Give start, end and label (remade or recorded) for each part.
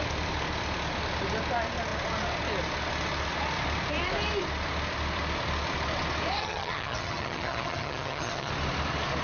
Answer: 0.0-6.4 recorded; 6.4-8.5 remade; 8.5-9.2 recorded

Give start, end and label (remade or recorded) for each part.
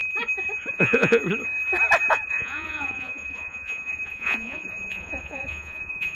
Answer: 0.0-0.7 recorded; 0.7-1.2 remade; 1.2-2.1 recorded; 2.1-6.1 remade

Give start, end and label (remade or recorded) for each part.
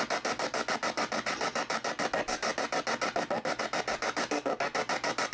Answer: 0.0-5.3 recorded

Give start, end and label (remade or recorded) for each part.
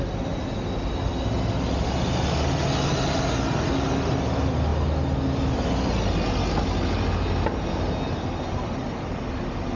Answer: 0.0-9.8 recorded